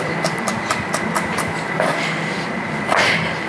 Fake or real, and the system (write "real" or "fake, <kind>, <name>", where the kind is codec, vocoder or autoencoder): real